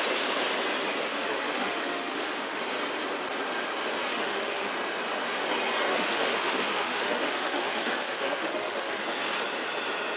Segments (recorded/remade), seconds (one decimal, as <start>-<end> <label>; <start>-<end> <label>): 0.0-1.1 recorded; 1.1-2.6 remade; 2.6-4.1 recorded; 4.1-4.7 remade; 4.7-5.9 recorded; 5.9-9.0 remade; 9.0-10.2 recorded

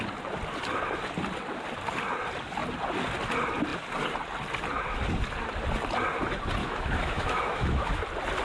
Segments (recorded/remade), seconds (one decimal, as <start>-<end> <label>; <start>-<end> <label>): 0.0-6.6 recorded; 6.6-8.0 remade; 8.0-8.4 recorded

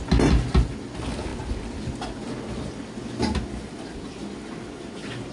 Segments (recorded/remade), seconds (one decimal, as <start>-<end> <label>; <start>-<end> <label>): 0.0-5.3 recorded

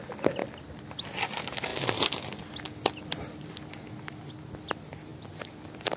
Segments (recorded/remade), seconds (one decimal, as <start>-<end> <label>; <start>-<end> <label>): 0.0-6.0 recorded

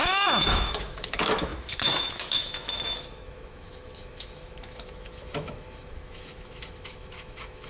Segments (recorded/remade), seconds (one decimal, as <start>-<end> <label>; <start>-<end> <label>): 0.0-7.7 remade

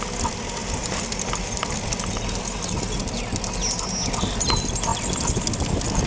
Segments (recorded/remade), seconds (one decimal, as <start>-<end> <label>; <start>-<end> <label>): 0.0-6.1 recorded

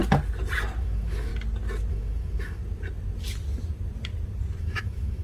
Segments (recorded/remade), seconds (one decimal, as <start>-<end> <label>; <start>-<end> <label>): 0.0-0.8 recorded; 0.8-1.3 remade; 1.3-1.9 recorded; 1.9-2.6 remade; 2.6-4.6 recorded; 4.6-5.2 remade

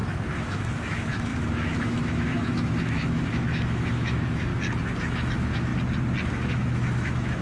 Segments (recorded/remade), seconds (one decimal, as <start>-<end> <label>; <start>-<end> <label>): 0.0-4.5 remade; 4.5-5.0 recorded; 5.0-5.7 remade; 5.7-6.3 recorded; 6.3-7.4 remade